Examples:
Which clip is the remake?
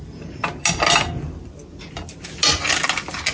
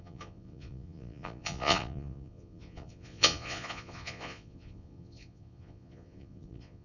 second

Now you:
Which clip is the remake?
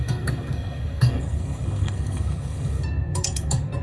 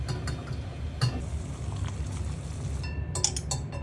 first